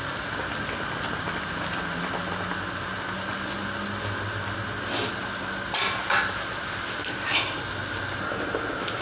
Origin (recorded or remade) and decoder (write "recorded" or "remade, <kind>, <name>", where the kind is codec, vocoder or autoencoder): recorded